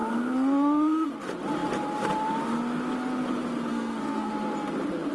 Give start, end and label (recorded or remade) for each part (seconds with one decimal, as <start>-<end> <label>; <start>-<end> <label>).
0.0-1.1 remade; 1.1-3.7 recorded; 3.7-4.3 remade; 4.3-5.1 recorded